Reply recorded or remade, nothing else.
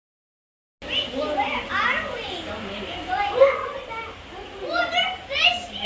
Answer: recorded